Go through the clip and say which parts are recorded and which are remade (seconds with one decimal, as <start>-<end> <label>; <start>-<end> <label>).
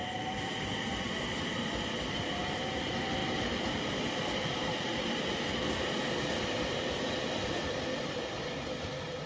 0.0-2.6 recorded; 2.6-4.9 remade; 4.9-7.3 recorded; 7.3-9.3 remade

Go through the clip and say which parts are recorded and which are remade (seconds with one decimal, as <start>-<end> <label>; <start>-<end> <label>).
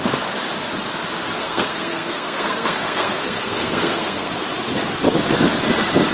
0.0-1.4 recorded; 1.4-4.3 remade; 4.3-6.1 recorded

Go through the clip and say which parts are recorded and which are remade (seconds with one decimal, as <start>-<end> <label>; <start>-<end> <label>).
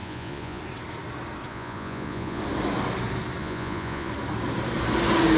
0.0-0.6 remade; 0.6-1.5 recorded; 1.5-2.4 remade; 2.4-3.4 recorded; 3.4-4.1 remade; 4.1-5.4 recorded